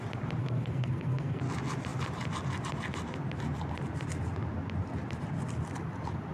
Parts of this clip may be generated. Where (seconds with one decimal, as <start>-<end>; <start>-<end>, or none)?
0.4-1.4